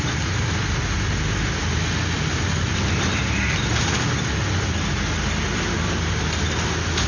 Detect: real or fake real